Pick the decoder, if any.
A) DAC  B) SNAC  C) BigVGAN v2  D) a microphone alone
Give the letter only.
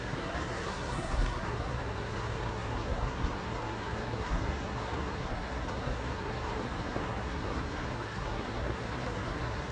B